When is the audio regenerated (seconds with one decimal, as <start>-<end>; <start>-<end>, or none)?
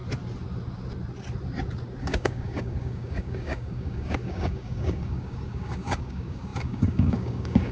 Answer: 2.0-7.7